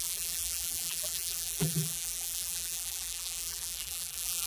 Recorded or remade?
remade